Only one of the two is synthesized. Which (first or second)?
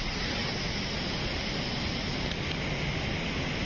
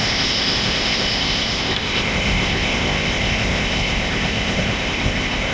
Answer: second